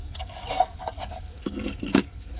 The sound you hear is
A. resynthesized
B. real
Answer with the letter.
A